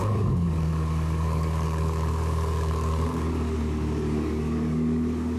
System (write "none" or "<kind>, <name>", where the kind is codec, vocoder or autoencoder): codec, DAC